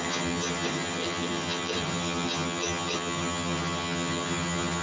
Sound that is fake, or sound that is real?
fake